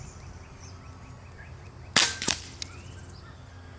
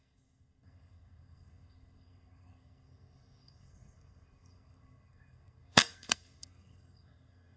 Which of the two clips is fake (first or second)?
second